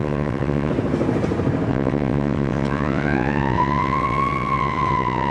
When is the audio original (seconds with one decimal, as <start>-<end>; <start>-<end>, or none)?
0.7-1.7